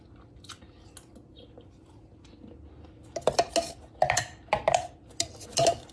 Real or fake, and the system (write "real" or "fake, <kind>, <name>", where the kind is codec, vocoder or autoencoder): real